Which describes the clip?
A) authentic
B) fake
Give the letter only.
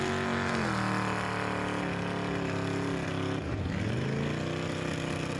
A